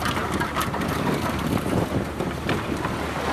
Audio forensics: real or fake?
real